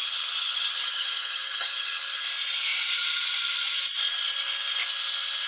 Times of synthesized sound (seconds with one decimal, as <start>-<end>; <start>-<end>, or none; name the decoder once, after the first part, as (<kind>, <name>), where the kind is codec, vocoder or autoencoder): 0.0-2.2 (vocoder, HiFi-GAN)